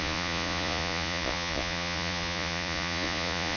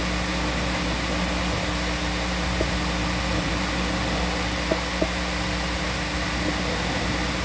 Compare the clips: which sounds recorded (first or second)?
second